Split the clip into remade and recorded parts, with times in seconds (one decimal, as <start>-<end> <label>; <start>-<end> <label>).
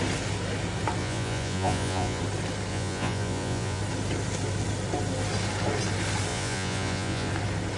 0.0-1.0 recorded; 1.0-2.2 remade; 2.2-2.7 recorded; 2.7-3.8 remade; 3.8-6.3 recorded; 6.3-7.3 remade; 7.3-7.8 recorded